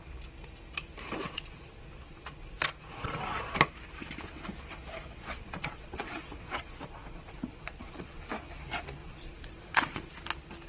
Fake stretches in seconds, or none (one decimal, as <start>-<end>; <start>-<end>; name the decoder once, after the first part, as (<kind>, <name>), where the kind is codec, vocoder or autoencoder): 1.2-3.2 (vocoder, Vocos); 5.2-8.2; 9.0-10.1